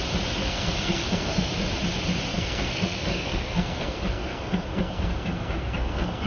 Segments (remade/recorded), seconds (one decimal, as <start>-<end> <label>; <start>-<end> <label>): 0.0-0.4 recorded; 0.4-1.5 remade; 1.5-2.3 recorded; 2.3-6.3 remade